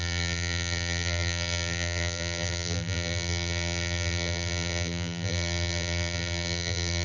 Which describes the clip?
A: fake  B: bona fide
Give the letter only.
A